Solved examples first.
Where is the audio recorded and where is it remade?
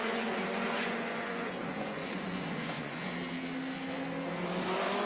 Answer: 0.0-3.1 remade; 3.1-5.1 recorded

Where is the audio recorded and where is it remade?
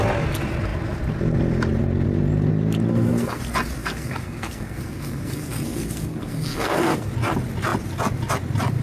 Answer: 0.0-2.9 recorded; 2.9-3.4 remade; 3.4-3.8 recorded; 3.8-7.1 remade; 7.1-8.8 recorded